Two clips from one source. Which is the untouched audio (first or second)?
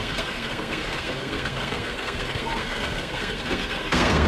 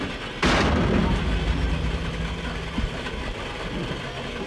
second